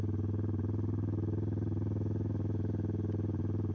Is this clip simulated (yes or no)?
no